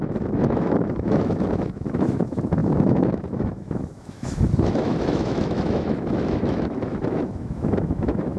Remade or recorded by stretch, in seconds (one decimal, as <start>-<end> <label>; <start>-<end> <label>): 0.0-8.4 remade